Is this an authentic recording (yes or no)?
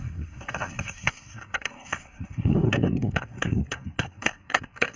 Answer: no